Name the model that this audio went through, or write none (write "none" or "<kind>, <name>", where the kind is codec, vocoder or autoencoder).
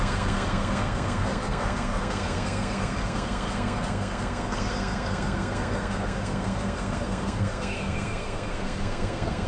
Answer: codec, SNAC